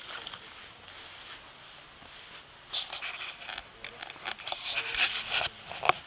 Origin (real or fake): real